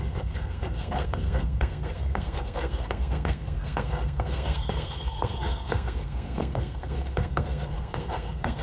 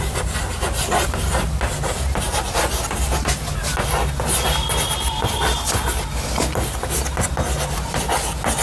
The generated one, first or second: first